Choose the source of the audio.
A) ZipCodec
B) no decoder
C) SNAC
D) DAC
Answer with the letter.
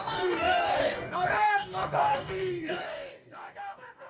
D